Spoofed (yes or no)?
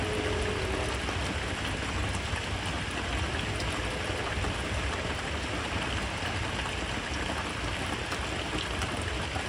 no